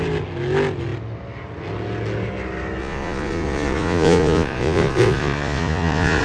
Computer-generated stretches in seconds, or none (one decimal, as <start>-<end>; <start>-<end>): 2.8-6.2